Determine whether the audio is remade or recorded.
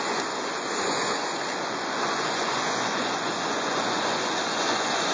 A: remade